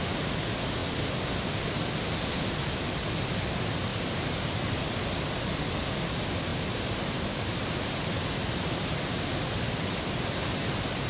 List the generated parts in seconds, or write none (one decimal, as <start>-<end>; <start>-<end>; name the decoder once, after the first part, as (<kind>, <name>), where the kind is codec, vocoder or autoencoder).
3.9-4.7 (vocoder, BigVGAN v2); 6.5-9.2